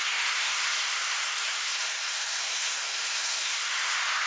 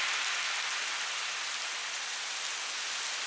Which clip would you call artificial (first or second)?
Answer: first